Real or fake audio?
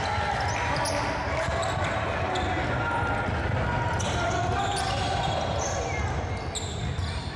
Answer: real